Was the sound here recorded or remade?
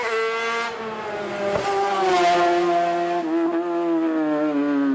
recorded